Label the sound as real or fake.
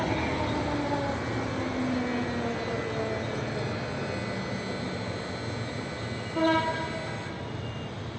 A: real